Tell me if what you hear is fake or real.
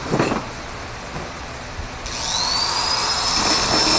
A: real